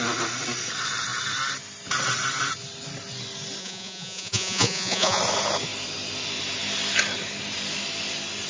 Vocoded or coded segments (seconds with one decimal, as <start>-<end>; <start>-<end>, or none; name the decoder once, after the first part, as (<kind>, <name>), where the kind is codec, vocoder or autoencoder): 3.6-5.2 (vocoder, Vocos)